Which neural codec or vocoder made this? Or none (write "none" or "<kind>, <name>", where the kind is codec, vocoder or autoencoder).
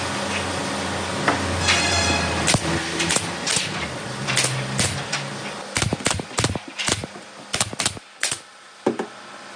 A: none